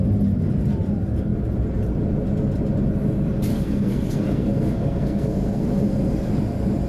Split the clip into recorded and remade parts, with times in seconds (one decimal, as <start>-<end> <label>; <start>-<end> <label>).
0.0-3.5 recorded; 3.5-6.3 remade; 6.3-6.9 recorded